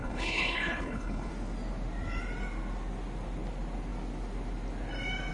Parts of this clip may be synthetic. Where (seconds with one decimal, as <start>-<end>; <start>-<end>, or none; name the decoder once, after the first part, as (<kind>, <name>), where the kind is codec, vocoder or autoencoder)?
0.0-1.3 (codec, HILCodec)